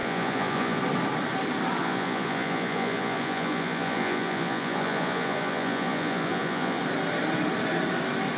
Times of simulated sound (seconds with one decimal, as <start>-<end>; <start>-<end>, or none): 0.0-0.8; 1.8-6.8